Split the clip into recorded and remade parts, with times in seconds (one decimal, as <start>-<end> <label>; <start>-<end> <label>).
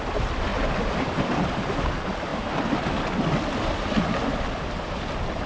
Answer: 0.0-5.5 recorded